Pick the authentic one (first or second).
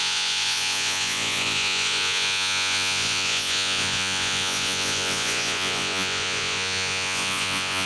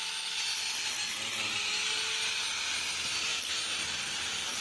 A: second